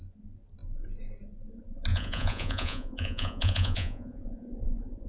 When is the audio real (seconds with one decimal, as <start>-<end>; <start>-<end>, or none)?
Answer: 0.0-1.9